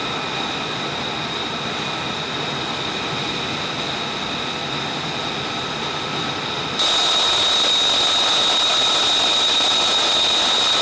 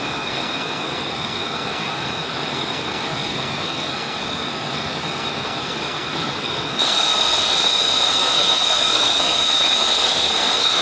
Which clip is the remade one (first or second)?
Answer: second